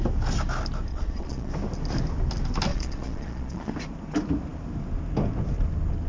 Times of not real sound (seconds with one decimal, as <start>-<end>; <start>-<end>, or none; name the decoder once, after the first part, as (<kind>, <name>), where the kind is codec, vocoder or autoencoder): 0.9-1.5 (vocoder, Vocos); 2.7-3.7